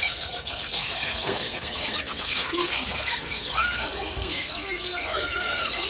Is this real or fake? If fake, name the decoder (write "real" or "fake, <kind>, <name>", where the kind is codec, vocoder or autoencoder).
fake, codec, SNAC